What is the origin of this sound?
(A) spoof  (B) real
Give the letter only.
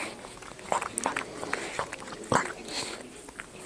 B